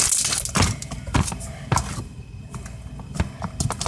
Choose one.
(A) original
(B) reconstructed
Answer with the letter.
A